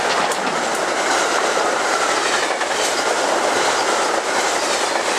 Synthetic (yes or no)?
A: no